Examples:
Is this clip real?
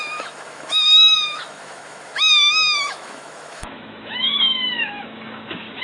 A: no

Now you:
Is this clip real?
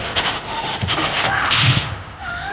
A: no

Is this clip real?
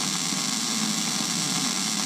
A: yes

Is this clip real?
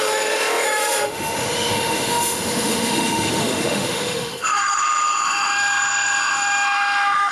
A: no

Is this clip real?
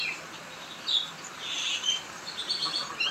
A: yes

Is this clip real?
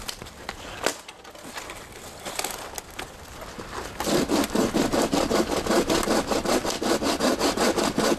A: yes